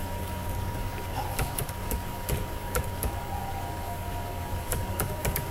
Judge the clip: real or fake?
fake